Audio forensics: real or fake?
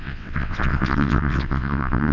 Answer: fake